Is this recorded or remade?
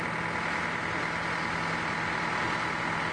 recorded